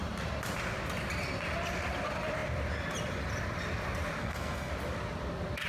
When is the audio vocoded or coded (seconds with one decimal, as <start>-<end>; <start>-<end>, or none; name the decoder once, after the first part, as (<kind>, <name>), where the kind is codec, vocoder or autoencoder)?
4.2-4.7 (codec, SNAC)